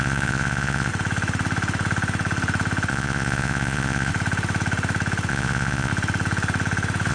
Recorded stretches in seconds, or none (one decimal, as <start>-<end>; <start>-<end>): 0.9-2.9; 4.1-5.3; 5.9-7.1